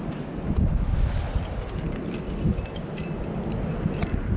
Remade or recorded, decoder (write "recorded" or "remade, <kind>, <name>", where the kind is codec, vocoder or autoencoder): recorded